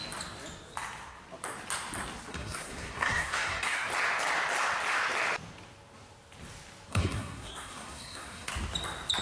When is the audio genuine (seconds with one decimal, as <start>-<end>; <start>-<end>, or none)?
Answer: 0.0-2.3; 3.9-6.9; 8.5-9.2